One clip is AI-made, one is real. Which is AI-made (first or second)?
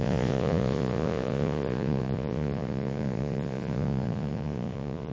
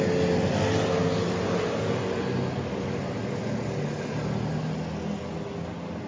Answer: first